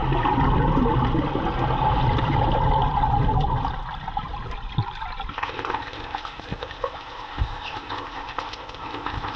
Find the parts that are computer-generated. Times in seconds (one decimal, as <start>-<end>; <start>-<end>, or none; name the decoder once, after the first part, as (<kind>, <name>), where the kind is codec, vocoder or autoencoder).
5.3-9.4 (codec, ZipCodec)